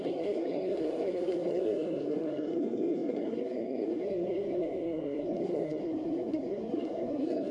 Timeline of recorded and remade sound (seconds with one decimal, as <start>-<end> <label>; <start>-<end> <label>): 0.0-7.5 remade